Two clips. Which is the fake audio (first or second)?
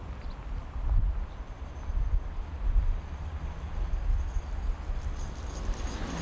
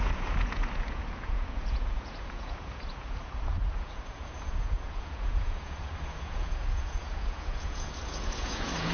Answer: second